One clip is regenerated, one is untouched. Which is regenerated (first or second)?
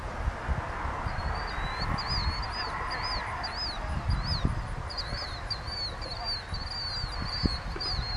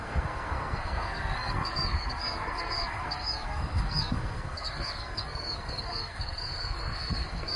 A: second